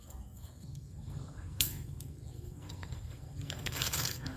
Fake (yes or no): yes